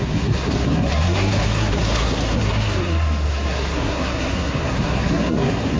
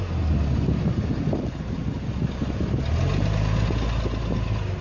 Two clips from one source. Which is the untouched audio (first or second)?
second